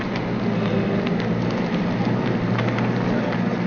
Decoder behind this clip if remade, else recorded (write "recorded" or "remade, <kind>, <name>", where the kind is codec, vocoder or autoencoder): recorded